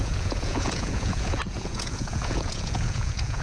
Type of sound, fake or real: fake